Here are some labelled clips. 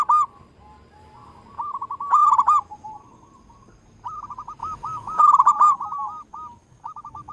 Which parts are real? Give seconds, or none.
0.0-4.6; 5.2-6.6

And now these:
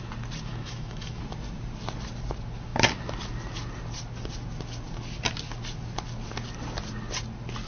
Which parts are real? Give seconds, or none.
0.0-0.5; 1.2-7.7

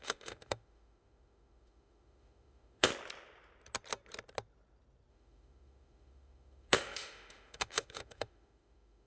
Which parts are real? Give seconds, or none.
2.9-5.1